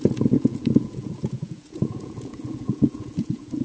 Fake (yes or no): yes